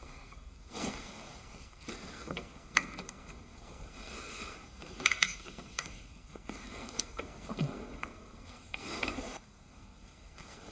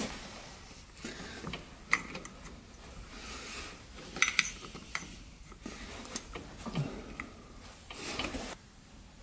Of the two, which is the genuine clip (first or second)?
second